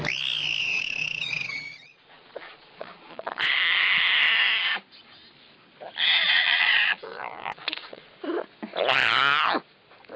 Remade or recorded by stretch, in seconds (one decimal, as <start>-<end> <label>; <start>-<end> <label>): 0.0-0.6 recorded; 0.6-3.5 remade; 3.5-6.2 recorded; 6.2-8.1 remade; 8.1-10.2 recorded